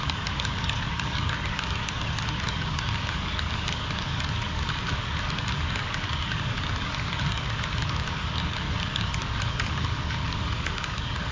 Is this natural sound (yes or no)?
no